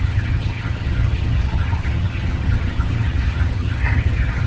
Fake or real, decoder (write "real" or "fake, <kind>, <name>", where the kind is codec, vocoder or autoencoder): fake, vocoder, HiFi-GAN